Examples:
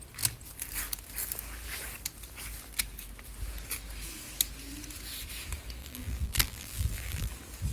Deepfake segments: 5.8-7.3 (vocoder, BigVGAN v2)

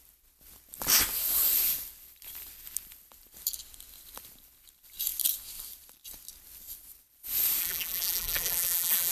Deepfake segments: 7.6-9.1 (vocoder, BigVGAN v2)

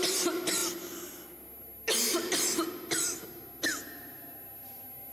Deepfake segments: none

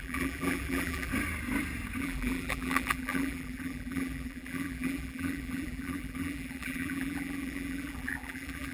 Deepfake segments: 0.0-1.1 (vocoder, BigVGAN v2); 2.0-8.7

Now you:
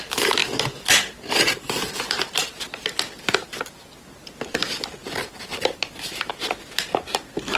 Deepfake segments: 0.4-2.3 (vocoder, BigVGAN v2); 5.0-6.3

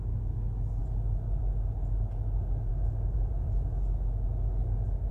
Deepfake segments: none

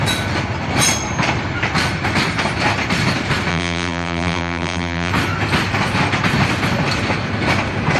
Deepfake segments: 3.5-5.1 (vocoder, BigVGAN v2)